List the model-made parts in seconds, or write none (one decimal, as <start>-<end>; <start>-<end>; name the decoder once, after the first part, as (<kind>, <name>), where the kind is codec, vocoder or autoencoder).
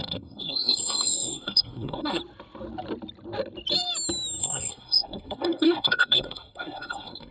0.0-2.2 (codec, SNAC); 4.4-7.3